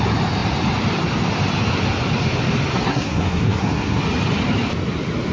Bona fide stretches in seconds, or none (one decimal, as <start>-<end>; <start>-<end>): 0.0-2.9; 4.0-5.3